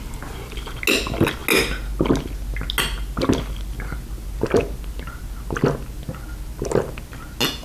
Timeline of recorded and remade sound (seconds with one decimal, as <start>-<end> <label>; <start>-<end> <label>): 0.0-7.6 recorded